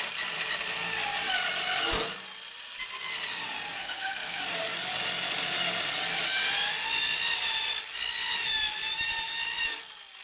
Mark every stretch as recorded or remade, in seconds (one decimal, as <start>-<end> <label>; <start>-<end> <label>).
0.0-3.8 recorded; 3.8-4.4 remade; 4.4-10.2 recorded

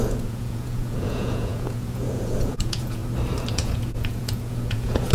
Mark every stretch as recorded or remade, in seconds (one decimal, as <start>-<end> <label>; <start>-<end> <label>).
0.0-3.0 remade; 3.0-3.5 recorded; 3.5-5.1 remade

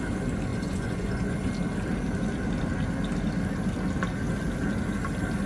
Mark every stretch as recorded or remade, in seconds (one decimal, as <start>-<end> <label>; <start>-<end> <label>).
0.0-0.5 recorded; 0.5-1.5 remade; 1.5-5.5 recorded

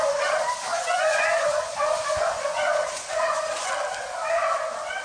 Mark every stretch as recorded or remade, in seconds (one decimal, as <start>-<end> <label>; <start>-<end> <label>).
0.0-0.7 recorded; 0.7-3.7 remade; 3.7-5.0 recorded

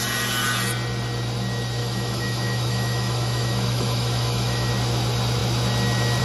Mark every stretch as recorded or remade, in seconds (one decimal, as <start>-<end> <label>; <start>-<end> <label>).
0.0-1.8 recorded; 1.8-4.7 remade; 4.7-6.2 recorded

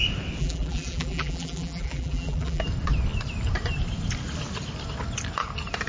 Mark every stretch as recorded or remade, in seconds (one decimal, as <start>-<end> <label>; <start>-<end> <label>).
0.0-0.4 recorded; 0.4-2.6 remade; 2.6-5.9 recorded

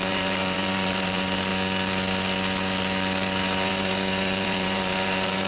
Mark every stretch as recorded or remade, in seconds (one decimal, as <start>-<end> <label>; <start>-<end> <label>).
0.0-1.5 remade; 1.5-3.7 recorded; 3.7-5.5 remade

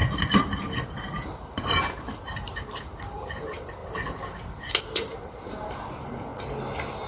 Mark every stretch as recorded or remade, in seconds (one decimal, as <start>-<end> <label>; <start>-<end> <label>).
0.0-3.8 remade; 3.8-4.8 recorded; 4.8-6.3 remade; 6.3-7.1 recorded